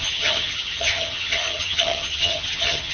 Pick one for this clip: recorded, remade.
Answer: remade